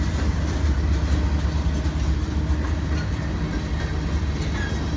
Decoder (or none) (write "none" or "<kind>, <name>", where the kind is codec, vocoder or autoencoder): none